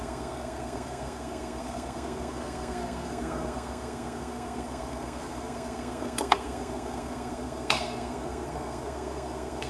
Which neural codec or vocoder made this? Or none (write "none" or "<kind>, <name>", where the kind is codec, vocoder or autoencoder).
codec, SNAC